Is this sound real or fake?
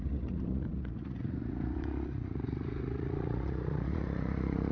fake